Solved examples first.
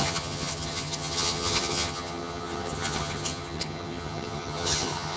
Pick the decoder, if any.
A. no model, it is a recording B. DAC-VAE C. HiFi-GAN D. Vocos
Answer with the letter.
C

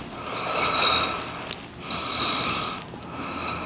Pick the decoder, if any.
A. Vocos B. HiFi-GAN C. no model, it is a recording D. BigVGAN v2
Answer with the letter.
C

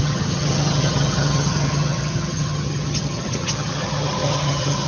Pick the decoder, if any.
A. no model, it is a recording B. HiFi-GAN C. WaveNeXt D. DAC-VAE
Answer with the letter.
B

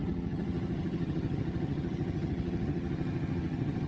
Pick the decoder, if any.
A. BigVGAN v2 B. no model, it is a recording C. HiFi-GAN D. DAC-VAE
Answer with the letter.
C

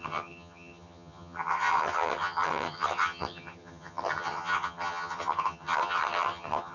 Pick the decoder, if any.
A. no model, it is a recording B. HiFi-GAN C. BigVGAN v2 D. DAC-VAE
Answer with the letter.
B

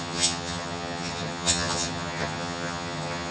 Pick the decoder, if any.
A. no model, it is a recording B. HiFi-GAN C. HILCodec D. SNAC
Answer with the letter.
B